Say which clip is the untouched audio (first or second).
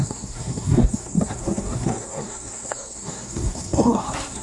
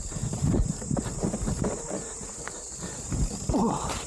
second